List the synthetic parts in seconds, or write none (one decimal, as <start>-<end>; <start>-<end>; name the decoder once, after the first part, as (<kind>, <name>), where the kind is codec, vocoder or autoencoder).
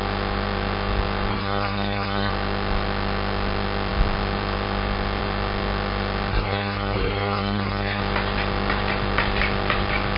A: 1.3-2.3 (codec, SNAC); 6.3-8.0